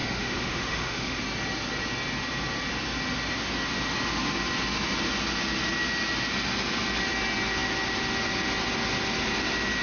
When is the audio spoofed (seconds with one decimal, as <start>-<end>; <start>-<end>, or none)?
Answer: 0.0-1.2